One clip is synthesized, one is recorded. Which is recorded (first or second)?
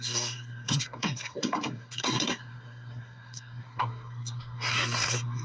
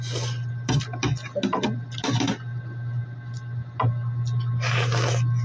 second